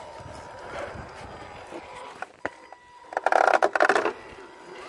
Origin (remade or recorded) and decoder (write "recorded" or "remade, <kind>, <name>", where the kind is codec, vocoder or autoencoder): recorded